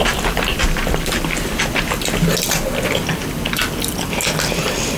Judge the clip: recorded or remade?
recorded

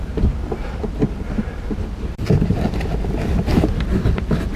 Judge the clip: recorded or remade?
recorded